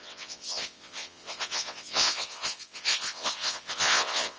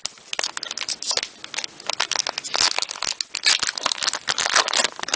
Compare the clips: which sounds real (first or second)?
second